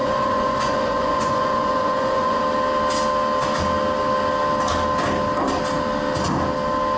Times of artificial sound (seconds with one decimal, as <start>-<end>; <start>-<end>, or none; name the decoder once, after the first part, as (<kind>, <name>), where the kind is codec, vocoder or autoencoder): 0.0-2.4 (vocoder, Vocos)